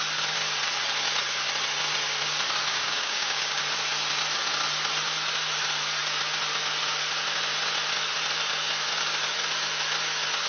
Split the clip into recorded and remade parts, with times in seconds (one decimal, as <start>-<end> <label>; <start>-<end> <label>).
0.0-2.7 recorded; 2.7-3.6 remade; 3.6-10.5 recorded